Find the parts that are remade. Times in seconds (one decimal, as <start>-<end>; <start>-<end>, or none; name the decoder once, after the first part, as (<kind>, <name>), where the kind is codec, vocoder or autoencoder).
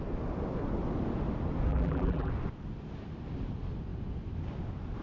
1.7-2.3 (vocoder, BigVGAN v2)